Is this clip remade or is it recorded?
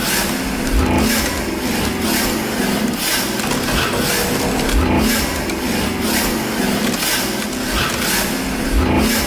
recorded